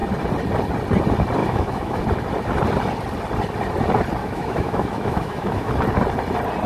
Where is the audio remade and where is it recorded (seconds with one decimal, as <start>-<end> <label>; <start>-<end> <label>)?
0.0-1.4 recorded; 1.4-2.0 remade; 2.0-4.2 recorded; 4.2-5.7 remade; 5.7-6.7 recorded